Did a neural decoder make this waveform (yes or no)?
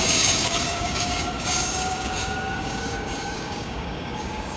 yes